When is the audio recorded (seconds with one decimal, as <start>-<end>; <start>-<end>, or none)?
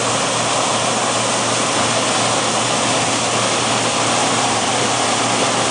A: 0.0-4.2; 5.1-5.7